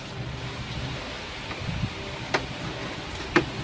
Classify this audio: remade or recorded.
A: recorded